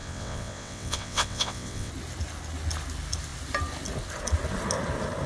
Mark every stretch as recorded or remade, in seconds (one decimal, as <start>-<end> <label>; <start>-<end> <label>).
0.0-1.9 remade; 1.9-5.3 recorded